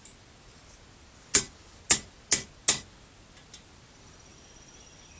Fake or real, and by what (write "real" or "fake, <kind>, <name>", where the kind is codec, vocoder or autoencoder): real